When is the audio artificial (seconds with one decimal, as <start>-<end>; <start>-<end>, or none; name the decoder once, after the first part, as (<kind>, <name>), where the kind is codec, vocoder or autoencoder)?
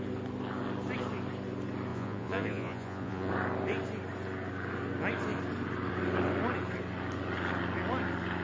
1.9-3.3 (vocoder, Vocos)